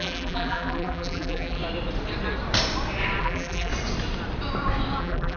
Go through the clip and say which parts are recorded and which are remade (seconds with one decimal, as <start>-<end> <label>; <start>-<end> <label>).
0.0-1.6 remade; 1.6-3.2 recorded; 3.2-3.7 remade; 3.7-5.0 recorded; 5.0-5.4 remade